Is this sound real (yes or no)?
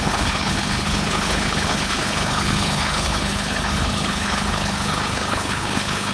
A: no